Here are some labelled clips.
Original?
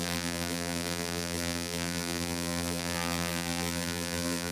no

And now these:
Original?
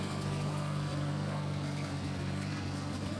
no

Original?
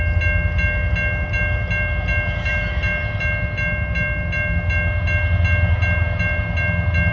yes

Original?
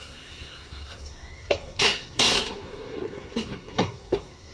no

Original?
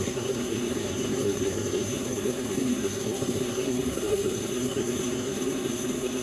no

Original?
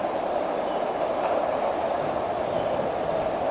yes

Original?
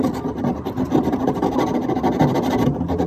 yes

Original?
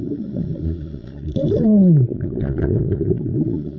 no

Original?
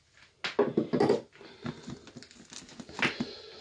yes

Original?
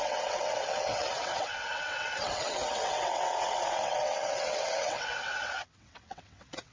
no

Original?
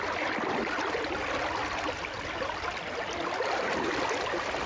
yes